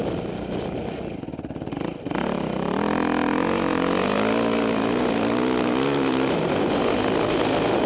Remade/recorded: recorded